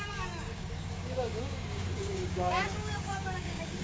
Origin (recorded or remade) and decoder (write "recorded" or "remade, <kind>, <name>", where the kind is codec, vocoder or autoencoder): remade, codec, DAC